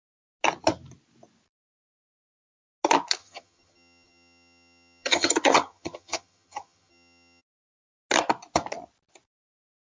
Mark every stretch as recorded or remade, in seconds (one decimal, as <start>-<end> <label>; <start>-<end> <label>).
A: 0.0-3.2 recorded; 3.2-7.4 remade; 7.4-10.0 recorded